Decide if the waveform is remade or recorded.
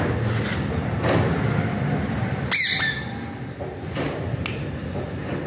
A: recorded